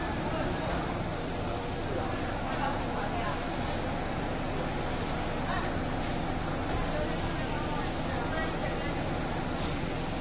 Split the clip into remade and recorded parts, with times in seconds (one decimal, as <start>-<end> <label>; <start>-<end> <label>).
0.0-0.9 remade; 0.9-10.2 recorded